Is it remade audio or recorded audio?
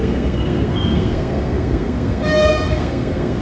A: remade